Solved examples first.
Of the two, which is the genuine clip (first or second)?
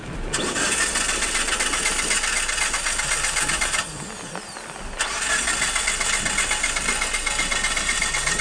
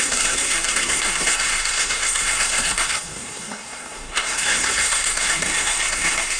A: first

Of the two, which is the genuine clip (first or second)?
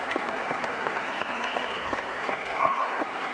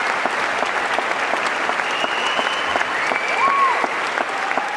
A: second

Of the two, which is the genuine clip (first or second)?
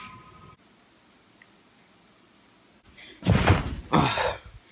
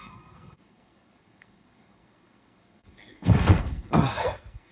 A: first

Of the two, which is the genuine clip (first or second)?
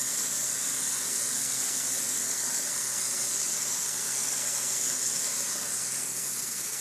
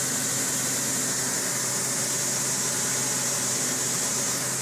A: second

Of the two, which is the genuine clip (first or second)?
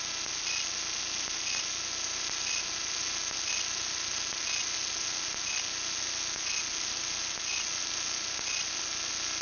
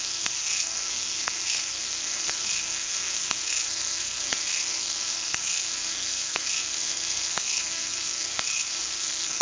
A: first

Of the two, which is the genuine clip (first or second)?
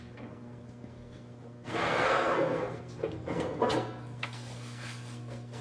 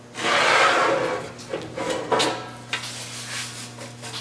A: second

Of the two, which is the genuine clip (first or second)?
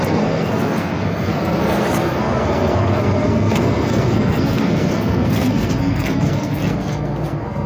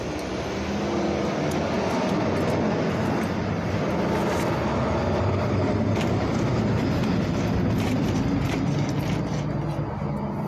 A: second